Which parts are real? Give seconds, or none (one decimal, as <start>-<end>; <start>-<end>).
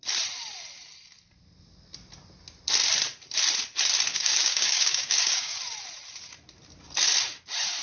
0.0-4.1; 5.6-7.8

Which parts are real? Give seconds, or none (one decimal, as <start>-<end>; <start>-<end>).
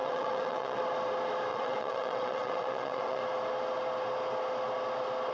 0.8-1.5; 3.2-5.3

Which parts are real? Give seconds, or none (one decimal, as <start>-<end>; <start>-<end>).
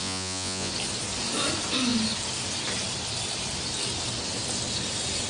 0.7-5.3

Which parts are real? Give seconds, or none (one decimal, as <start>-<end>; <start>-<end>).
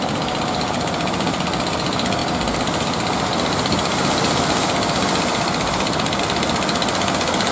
0.0-7.5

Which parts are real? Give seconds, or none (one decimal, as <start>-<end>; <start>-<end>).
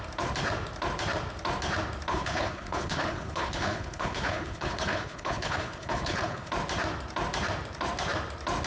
0.0-2.1; 6.5-8.7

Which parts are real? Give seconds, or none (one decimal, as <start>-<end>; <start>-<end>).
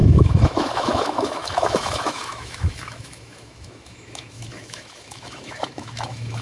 none